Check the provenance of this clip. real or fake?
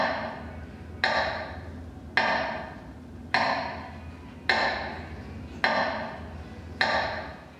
real